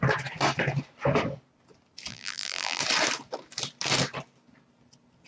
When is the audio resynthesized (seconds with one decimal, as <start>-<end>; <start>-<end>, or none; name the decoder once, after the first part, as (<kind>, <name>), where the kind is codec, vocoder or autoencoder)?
2.1-2.8 (vocoder, BigVGAN v2)